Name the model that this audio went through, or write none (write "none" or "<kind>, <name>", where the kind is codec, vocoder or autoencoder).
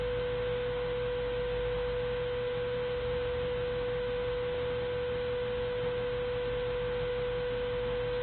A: none